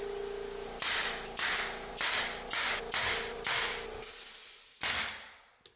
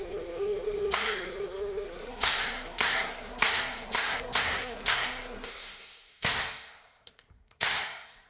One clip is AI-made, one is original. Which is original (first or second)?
first